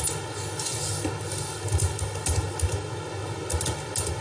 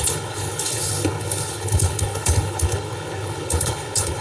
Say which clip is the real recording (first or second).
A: first